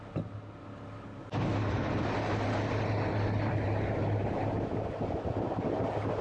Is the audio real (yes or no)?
yes